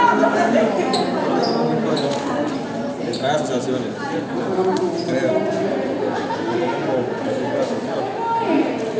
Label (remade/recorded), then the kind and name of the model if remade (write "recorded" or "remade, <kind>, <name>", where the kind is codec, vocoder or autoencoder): recorded